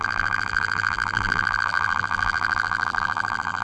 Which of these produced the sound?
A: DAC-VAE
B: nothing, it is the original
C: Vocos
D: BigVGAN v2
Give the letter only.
D